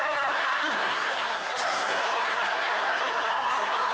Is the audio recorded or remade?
remade